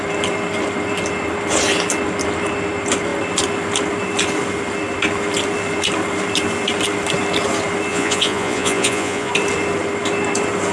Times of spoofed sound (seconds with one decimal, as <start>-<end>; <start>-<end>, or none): 7.9-9.3